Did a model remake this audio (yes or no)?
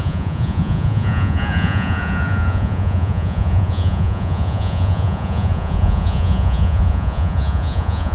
yes